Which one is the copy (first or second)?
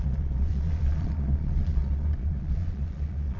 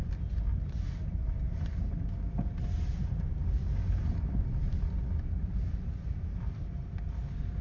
first